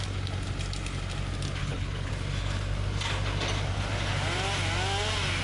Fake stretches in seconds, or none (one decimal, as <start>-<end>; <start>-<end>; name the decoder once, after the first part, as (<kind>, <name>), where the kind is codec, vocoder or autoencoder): 1.6-2.1 (codec, HILCodec)